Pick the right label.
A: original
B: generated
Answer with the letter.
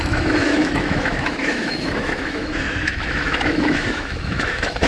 B